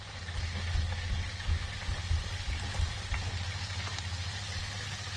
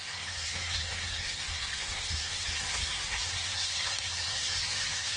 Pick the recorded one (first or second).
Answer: first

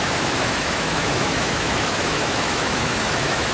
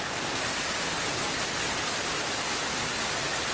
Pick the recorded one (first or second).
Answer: second